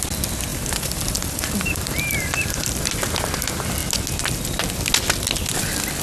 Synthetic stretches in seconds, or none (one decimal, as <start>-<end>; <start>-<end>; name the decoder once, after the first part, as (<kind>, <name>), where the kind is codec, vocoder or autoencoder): 0.5-2.8 (vocoder, BigVGAN v2)